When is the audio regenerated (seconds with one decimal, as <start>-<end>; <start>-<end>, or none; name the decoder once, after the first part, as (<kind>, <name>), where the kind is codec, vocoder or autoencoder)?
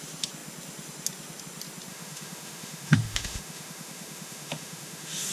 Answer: 1.9-5.3 (autoencoder, DAC-VAE)